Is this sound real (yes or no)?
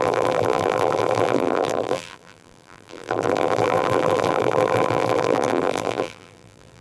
no